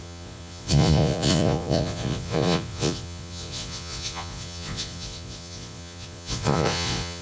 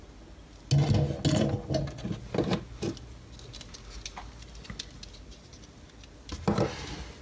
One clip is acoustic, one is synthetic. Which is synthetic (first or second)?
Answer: first